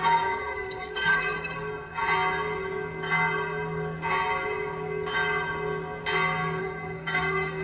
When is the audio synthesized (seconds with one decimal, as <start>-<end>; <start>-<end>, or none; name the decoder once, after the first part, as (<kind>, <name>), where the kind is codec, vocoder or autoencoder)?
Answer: 0.0-2.0 (codec, SNAC); 6.6-7.6

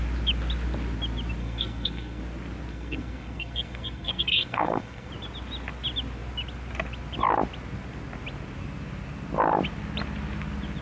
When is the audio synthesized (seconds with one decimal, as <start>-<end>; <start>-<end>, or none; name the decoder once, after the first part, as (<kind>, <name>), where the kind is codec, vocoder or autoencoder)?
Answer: 1.4-2.2 (codec, SNAC); 2.7-5.1

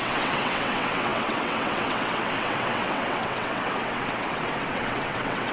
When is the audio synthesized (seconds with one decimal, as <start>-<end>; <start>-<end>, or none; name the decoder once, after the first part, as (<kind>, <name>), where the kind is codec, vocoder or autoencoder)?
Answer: 0.0-5.5 (vocoder, WaveNeXt)

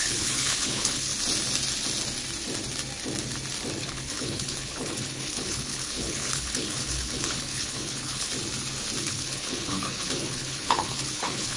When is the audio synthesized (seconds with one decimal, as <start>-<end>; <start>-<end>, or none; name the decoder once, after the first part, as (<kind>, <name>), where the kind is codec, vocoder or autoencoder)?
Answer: 0.0-1.1 (codec, HILCodec); 3.8-8.3; 9.0-11.6

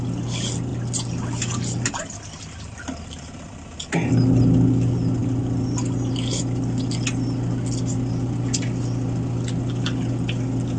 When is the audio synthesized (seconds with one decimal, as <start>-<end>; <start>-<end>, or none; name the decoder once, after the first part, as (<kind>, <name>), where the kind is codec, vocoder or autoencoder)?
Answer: none

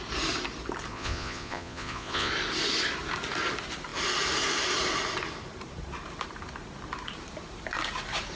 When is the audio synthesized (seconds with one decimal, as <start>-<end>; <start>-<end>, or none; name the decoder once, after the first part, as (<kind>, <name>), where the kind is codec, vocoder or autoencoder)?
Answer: 0.9-2.3 (vocoder, Vocos)

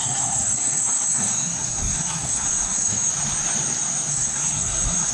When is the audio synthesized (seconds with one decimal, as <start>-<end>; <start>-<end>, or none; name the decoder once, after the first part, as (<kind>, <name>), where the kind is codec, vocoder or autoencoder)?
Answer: 0.0-3.1 (codec, SNAC); 4.1-5.1